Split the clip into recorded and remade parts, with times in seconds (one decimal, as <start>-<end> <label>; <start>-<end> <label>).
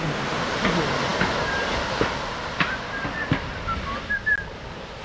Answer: 0.0-5.0 recorded